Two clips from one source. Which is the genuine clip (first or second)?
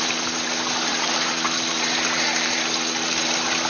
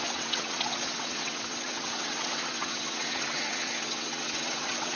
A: first